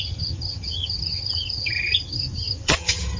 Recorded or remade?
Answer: remade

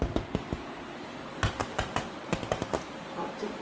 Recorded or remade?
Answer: recorded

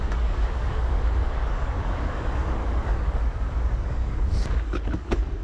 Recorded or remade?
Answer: remade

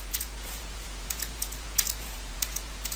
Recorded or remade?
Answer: remade